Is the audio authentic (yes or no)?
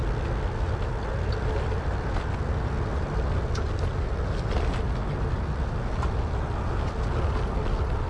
yes